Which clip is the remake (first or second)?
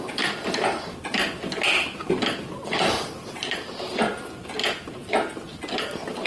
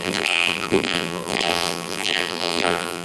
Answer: second